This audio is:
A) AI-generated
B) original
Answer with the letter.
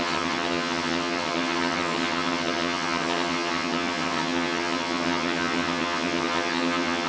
A